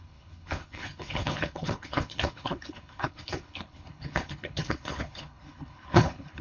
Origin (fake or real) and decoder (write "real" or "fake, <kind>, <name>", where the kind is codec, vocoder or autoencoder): fake, codec, HILCodec